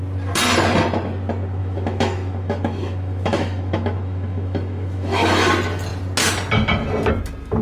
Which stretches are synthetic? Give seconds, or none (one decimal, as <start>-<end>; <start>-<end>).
1.6-5.5